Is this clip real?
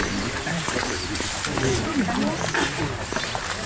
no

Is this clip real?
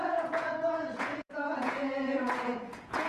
no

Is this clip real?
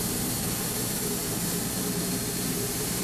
no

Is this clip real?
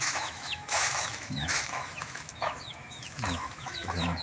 no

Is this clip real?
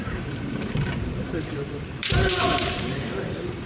no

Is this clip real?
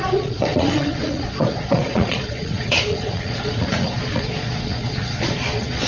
no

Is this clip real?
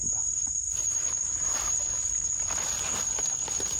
yes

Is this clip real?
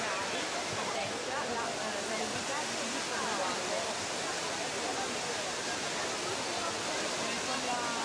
yes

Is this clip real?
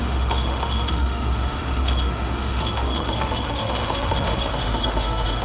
no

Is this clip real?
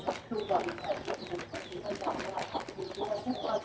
yes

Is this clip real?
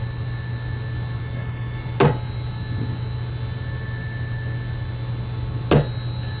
yes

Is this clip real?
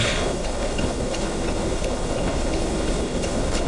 no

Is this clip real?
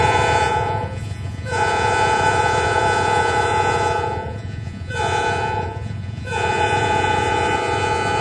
no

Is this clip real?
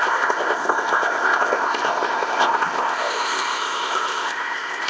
no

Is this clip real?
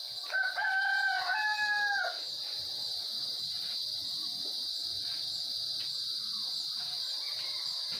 yes